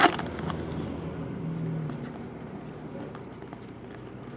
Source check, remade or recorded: recorded